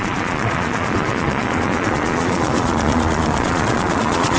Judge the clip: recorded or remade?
remade